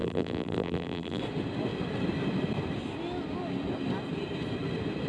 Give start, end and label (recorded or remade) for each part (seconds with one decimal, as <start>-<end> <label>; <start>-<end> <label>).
0.0-1.2 remade; 1.2-5.1 recorded